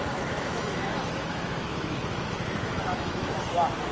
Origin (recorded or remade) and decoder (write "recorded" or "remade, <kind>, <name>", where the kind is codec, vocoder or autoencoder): remade, autoencoder, DAC-VAE